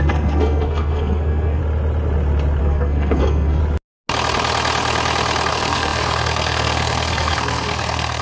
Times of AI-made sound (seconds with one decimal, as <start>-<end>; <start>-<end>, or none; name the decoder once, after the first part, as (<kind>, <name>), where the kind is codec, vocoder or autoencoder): 0.0-1.6 (codec, SNAC); 2.6-3.6; 5.5-8.2